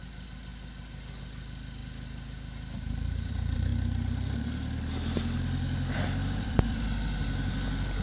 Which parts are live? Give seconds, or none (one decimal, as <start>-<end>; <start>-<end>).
1.8-3.3